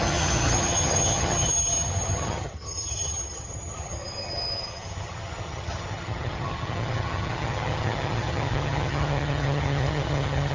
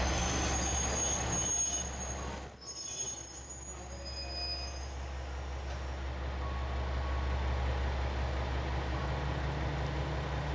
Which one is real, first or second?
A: second